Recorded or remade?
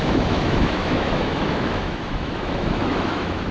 remade